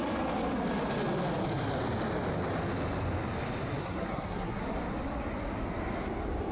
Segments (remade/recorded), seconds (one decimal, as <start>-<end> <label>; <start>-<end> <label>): 0.0-3.8 recorded; 3.8-4.6 remade; 4.6-6.5 recorded